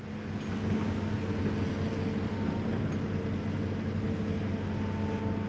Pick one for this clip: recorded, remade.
recorded